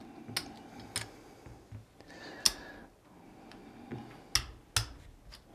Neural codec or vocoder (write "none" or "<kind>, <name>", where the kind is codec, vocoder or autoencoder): none